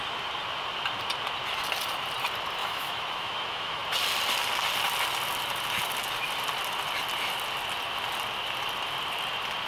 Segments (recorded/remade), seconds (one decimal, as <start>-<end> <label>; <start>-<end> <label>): 0.0-2.6 recorded; 2.6-3.8 remade; 3.8-9.7 recorded